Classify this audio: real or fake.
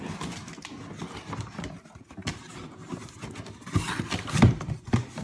real